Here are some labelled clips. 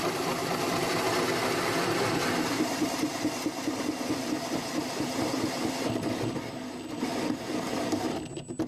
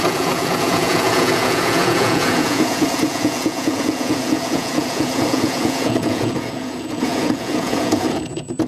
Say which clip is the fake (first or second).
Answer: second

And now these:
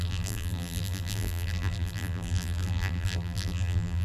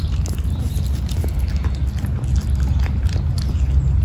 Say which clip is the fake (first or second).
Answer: first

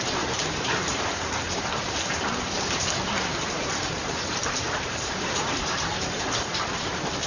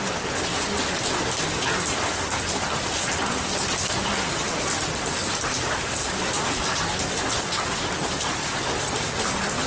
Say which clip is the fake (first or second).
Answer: first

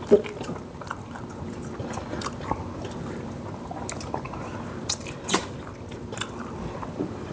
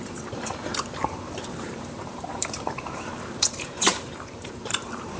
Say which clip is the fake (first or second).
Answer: second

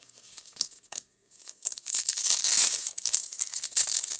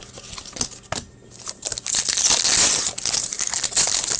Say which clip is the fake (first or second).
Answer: first